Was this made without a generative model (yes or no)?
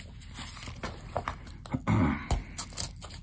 yes